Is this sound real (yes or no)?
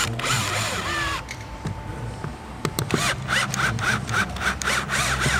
no